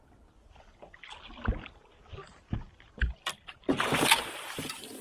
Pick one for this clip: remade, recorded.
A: recorded